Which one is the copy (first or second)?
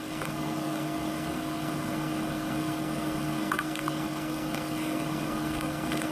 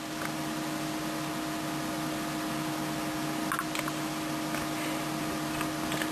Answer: first